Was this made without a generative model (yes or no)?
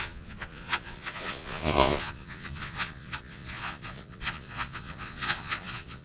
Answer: no